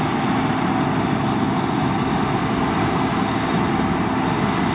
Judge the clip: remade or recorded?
recorded